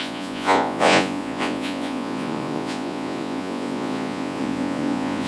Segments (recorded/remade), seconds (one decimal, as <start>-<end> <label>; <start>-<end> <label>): 0.0-5.3 remade